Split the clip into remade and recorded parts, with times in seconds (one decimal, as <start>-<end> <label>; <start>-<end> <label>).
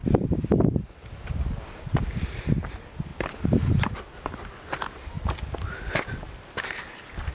0.0-3.1 recorded; 3.1-4.5 remade; 4.5-7.3 recorded